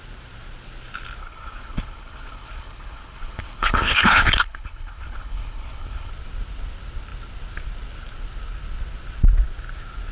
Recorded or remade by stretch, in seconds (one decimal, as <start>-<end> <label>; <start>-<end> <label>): 0.0-1.2 recorded; 1.2-6.1 remade; 6.1-10.1 recorded